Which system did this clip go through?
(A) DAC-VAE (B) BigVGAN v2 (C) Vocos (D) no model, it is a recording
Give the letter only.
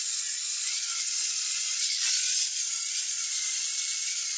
C